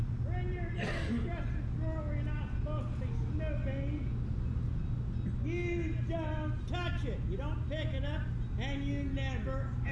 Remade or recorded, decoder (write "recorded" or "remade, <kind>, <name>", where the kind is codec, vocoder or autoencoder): recorded